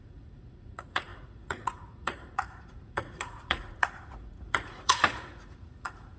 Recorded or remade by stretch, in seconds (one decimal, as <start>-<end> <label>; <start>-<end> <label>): 0.0-6.2 remade